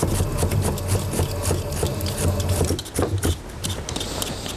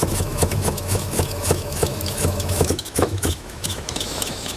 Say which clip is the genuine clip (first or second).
first